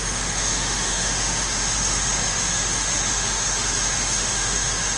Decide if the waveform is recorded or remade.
remade